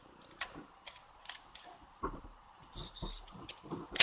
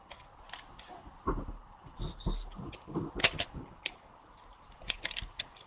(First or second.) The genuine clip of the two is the second